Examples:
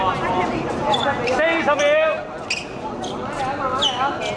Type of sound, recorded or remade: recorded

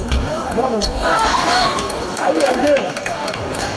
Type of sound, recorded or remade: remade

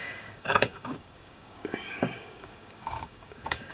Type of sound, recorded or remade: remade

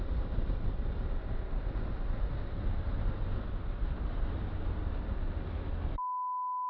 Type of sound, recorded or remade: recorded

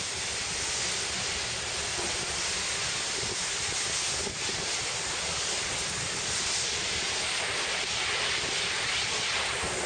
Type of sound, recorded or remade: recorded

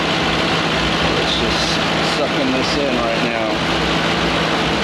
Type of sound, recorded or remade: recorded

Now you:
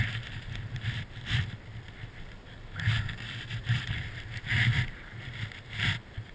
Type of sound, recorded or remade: recorded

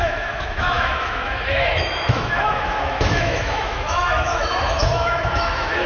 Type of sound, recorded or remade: remade